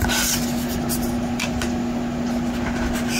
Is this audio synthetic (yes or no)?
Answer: no